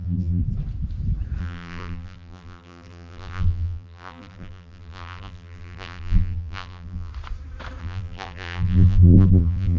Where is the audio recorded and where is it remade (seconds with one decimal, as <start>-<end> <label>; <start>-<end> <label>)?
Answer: 0.0-0.4 remade; 0.4-1.4 recorded; 1.4-7.1 remade; 7.1-7.8 recorded; 7.8-9.8 remade